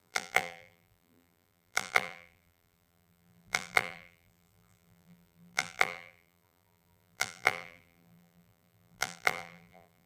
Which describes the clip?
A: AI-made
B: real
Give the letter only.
A